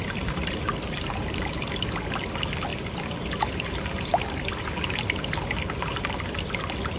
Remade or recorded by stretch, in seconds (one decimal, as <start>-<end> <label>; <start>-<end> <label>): 0.0-7.0 recorded